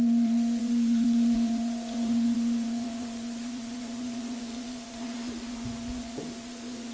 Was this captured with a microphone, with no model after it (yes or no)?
no